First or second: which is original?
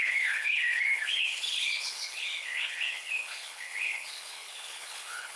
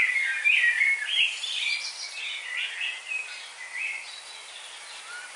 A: second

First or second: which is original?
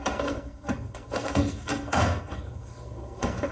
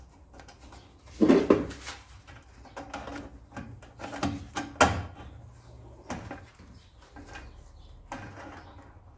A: second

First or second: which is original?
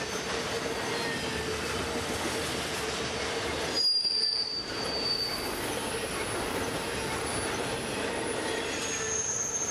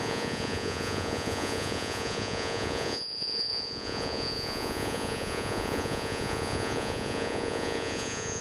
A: first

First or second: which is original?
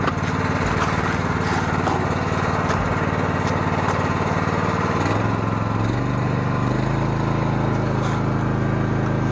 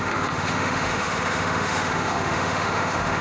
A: first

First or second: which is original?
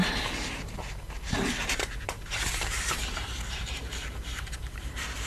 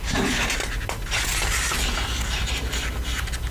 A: second